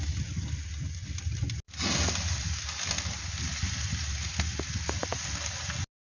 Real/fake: real